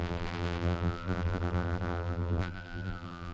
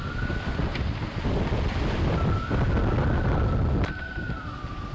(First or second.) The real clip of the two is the second